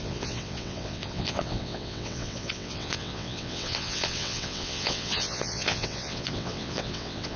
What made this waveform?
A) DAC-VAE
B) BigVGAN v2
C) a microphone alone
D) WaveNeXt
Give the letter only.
D